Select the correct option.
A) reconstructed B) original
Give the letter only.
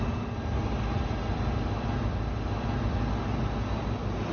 B